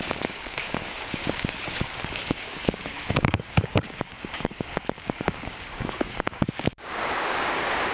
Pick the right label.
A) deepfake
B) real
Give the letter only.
A